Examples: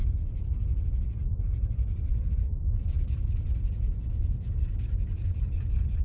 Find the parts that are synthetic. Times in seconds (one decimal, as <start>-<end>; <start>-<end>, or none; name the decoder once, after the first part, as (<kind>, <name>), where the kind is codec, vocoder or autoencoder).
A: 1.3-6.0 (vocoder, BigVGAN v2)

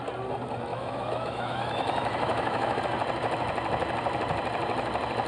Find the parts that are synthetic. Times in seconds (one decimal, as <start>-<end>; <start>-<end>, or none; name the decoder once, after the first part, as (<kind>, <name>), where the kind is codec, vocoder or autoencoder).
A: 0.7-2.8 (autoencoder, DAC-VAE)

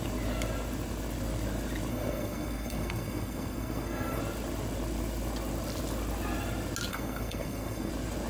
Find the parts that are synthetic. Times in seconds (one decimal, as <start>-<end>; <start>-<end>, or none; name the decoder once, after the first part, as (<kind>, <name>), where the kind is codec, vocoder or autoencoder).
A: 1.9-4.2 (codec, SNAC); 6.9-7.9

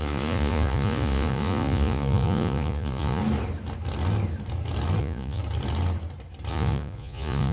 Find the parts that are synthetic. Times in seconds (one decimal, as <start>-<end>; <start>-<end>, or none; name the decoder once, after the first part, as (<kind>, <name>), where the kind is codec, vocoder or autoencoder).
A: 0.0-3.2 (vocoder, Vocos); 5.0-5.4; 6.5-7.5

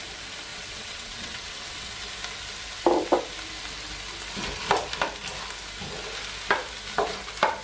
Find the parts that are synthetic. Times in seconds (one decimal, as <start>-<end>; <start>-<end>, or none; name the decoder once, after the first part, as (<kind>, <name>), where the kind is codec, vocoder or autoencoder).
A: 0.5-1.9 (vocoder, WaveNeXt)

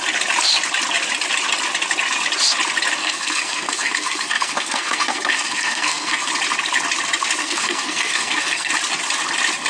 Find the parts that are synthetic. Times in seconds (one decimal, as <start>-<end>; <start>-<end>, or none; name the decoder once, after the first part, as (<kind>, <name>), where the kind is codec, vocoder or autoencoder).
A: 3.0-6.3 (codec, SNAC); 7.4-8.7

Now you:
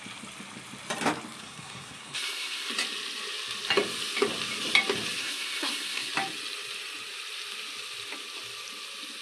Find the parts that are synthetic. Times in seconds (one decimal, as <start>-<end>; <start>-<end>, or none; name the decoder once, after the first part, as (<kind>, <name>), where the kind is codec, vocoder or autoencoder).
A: 1.4-2.7 (codec, SNAC); 5.2-6.1